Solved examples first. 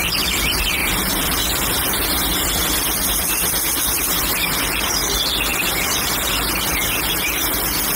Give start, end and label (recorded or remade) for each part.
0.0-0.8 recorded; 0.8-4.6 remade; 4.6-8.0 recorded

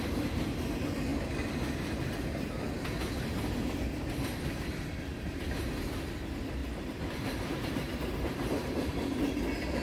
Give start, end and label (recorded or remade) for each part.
0.0-5.1 recorded; 5.1-5.8 remade; 5.8-6.6 recorded; 6.6-8.9 remade; 8.9-9.8 recorded